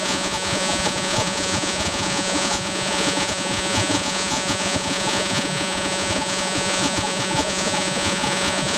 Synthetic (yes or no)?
yes